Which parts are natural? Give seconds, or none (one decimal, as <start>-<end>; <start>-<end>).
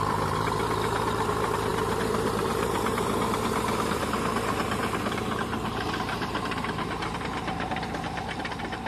none